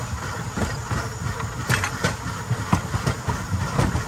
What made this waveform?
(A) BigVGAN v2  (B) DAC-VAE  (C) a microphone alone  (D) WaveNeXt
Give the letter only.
C